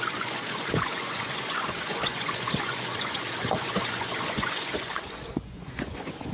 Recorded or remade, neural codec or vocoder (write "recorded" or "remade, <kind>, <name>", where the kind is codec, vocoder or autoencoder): remade, vocoder, Vocos